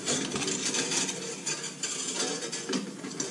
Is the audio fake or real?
real